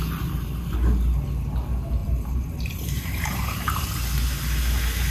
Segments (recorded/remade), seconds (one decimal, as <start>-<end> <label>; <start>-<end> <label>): 0.0-2.0 recorded; 2.0-3.9 remade; 3.9-5.1 recorded